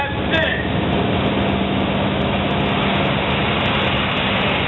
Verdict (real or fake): real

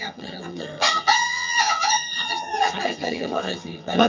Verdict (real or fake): fake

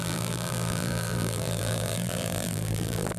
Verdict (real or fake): fake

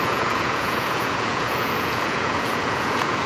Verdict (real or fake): fake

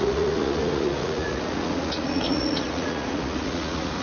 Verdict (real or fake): fake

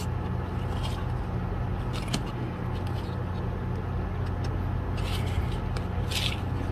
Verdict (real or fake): real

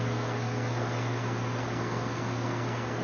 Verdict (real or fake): fake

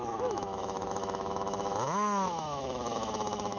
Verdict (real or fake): fake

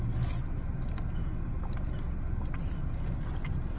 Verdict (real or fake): real